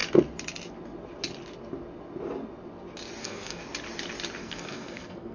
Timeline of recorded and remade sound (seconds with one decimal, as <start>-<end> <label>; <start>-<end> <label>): 0.0-3.2 recorded; 3.2-3.6 remade; 3.6-4.4 recorded; 4.4-5.3 remade